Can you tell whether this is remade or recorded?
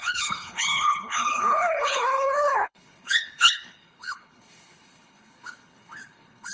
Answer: remade